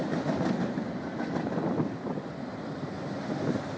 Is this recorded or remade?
recorded